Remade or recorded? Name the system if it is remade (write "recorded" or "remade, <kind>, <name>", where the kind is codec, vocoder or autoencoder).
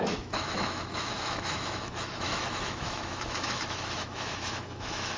remade, autoencoder, DAC-VAE